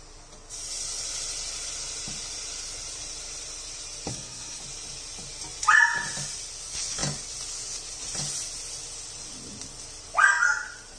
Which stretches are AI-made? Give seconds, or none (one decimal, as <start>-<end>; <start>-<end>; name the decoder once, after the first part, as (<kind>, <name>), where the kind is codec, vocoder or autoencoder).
4.1-4.6 (codec, SNAC)